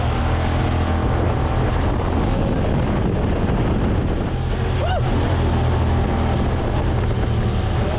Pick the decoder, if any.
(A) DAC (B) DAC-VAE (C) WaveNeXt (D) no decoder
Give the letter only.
D